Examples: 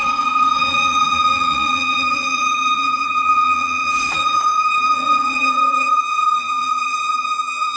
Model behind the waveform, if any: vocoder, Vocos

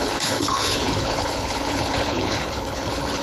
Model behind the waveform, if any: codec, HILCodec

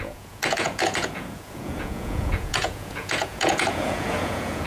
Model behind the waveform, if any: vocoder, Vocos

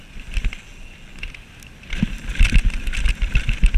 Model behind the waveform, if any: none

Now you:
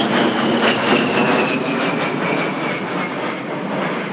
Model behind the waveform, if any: none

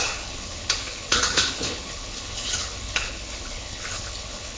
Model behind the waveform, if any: codec, HILCodec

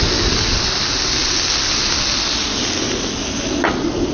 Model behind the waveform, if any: none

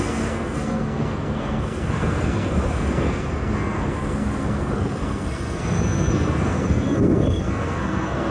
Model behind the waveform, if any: codec, SNAC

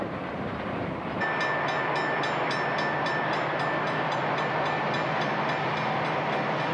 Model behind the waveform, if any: none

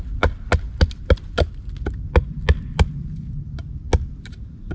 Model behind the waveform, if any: none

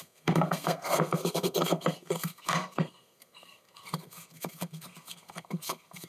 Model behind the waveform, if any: codec, SNAC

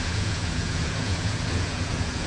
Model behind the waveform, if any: vocoder, Vocos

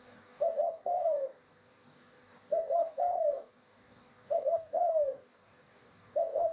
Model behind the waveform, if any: codec, DAC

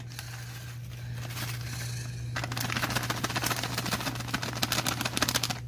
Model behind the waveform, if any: none